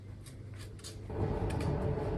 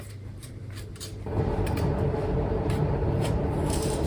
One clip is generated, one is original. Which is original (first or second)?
first